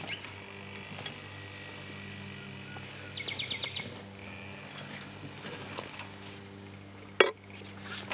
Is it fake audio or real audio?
real